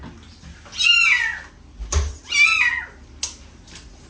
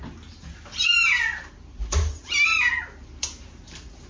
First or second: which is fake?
second